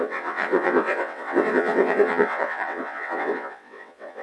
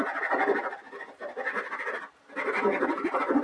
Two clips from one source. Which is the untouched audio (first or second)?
second